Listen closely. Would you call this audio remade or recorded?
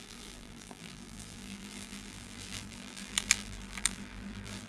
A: remade